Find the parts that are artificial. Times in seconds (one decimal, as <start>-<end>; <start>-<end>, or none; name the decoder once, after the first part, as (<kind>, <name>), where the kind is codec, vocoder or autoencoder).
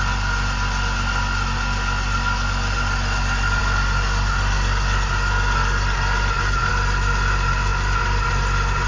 none